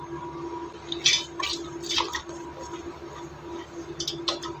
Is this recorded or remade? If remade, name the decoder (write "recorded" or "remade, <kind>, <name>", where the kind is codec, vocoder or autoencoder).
recorded